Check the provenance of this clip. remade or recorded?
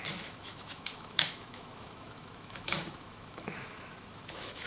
remade